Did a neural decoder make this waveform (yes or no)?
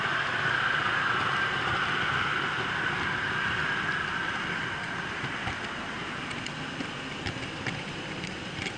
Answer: no